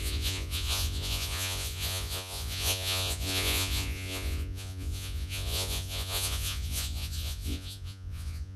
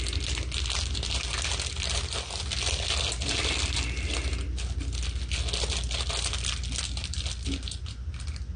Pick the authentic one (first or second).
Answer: second